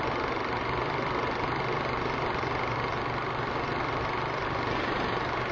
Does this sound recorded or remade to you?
recorded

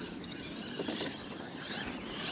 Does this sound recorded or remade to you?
recorded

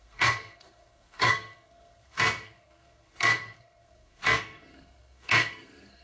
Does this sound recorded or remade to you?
remade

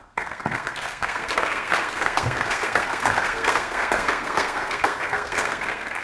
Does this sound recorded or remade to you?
remade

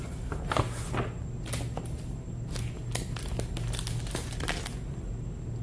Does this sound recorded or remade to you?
recorded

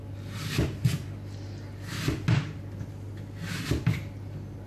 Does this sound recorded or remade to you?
recorded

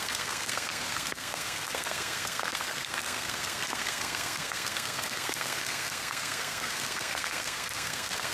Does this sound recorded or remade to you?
remade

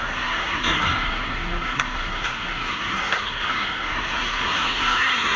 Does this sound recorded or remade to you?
remade